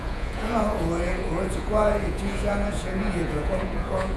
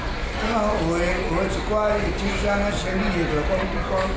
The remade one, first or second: first